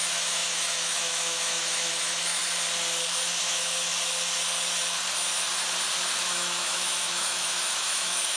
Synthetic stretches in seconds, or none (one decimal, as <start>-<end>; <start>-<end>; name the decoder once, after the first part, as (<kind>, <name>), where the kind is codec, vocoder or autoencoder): 0.0-2.4 (autoencoder, DAC-VAE); 3.4-3.9; 6.2-8.4